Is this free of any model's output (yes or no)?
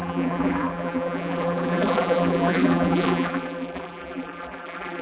no